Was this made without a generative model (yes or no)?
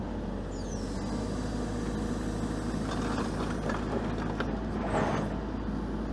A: yes